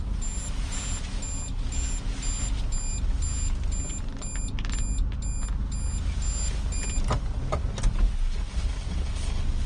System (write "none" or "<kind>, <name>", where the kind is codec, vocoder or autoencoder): none